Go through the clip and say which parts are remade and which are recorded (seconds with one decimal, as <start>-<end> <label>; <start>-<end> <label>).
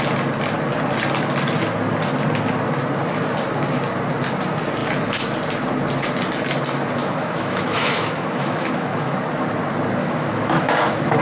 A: 0.0-7.0 recorded; 7.0-9.2 remade; 9.2-10.0 recorded; 10.0-11.2 remade